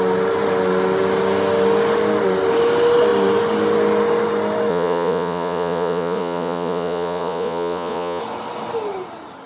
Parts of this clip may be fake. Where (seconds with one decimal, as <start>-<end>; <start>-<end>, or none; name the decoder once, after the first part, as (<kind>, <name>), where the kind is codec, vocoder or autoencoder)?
4.7-8.2 (vocoder, Vocos)